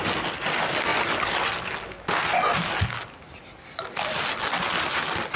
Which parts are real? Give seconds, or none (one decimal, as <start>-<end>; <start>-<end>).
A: 0.0-5.4